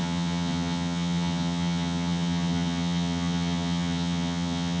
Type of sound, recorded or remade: remade